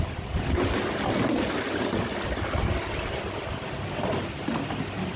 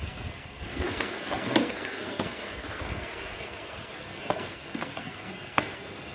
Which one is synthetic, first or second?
second